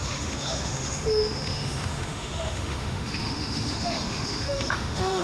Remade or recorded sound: remade